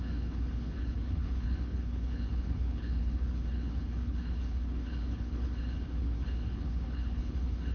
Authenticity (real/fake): fake